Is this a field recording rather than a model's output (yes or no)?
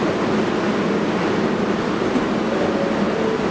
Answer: yes